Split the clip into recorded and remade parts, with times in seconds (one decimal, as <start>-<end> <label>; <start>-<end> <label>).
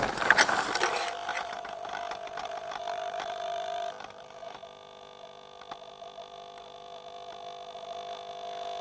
0.0-1.3 recorded; 1.3-4.6 remade; 4.6-8.8 recorded